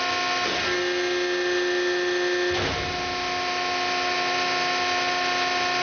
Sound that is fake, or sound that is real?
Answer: real